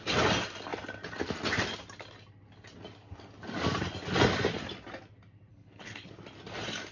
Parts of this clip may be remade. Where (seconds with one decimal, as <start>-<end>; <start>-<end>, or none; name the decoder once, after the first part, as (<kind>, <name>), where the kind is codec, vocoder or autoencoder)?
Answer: 5.5-6.1 (codec, HILCodec)